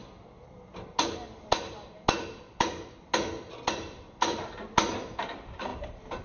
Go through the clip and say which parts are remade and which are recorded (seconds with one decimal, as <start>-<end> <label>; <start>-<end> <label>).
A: 0.0-6.2 recorded